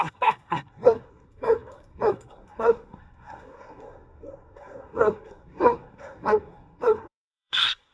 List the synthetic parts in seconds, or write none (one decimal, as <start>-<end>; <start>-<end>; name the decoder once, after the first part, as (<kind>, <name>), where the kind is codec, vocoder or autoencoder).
0.0-7.9 (codec, SNAC)